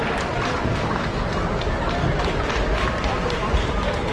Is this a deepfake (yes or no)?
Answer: no